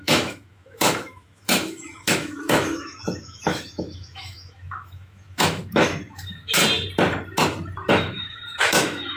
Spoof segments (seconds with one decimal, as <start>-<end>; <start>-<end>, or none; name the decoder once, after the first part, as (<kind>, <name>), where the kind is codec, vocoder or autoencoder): 0.0-6.6 (autoencoder, DAC-VAE); 7.9-9.2